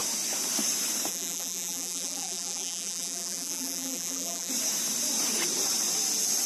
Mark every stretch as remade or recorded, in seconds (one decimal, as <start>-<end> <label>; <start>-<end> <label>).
0.0-1.1 recorded; 1.1-4.5 remade; 4.5-6.5 recorded